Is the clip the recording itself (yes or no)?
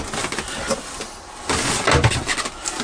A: yes